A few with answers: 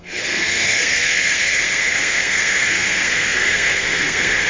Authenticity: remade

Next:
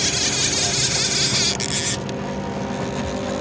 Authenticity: recorded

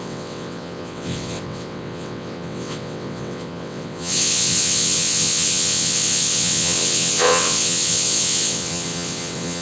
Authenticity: remade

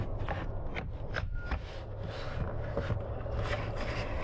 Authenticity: recorded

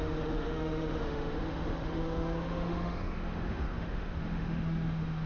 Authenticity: remade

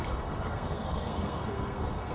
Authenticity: remade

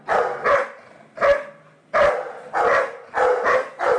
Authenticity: recorded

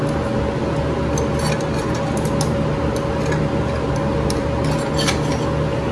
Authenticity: recorded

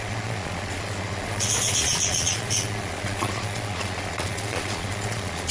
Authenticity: remade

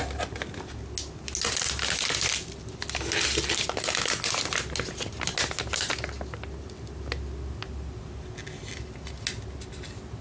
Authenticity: recorded